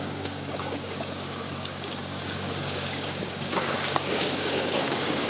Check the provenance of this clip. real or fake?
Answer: fake